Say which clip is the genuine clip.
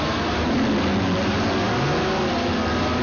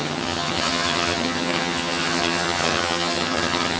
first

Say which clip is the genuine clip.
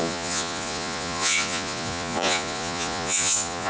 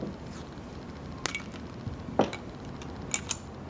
second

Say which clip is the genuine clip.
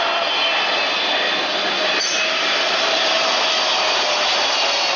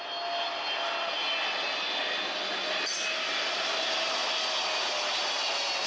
second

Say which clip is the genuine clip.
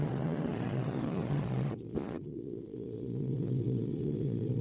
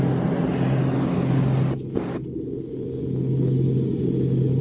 second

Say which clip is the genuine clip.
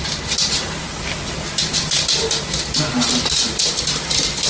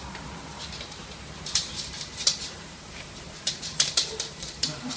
first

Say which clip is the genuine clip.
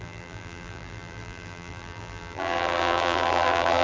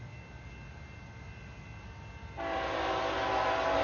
second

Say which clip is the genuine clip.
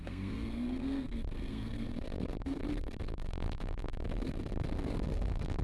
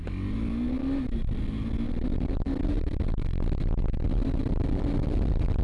second